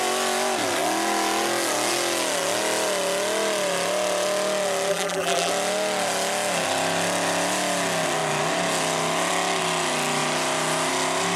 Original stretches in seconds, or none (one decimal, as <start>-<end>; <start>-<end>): 0.0-4.9; 5.5-11.4